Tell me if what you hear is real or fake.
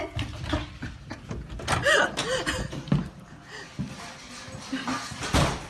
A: real